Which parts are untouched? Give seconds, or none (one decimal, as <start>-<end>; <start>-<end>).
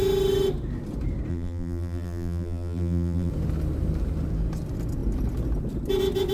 0.0-1.3; 3.3-6.3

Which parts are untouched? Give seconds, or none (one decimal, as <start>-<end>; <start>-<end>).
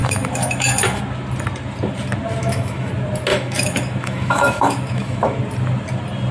1.0-2.4; 2.9-3.3; 5.4-6.3